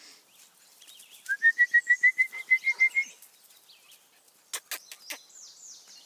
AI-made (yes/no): no